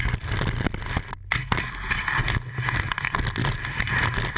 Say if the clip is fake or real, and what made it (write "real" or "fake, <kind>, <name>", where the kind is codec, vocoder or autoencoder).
real